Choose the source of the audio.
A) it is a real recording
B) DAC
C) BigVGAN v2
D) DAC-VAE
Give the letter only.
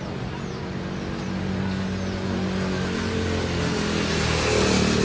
A